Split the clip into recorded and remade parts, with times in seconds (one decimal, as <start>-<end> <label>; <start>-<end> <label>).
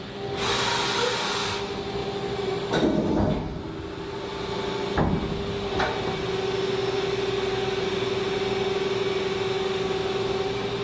0.0-10.8 recorded